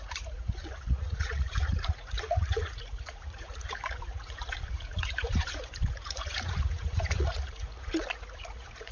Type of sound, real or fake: fake